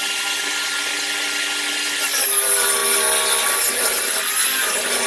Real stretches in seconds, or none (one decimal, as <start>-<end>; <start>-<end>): 0.0-5.1